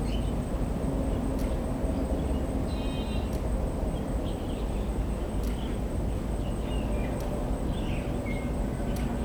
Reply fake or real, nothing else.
real